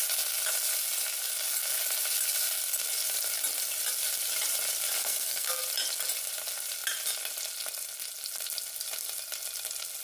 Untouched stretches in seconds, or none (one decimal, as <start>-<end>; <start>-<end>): 0.0-5.0; 5.6-10.0